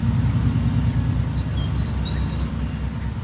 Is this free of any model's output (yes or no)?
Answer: yes